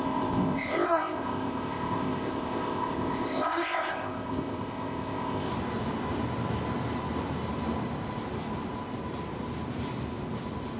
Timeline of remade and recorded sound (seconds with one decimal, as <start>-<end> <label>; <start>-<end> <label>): 0.0-5.5 remade; 5.5-10.8 recorded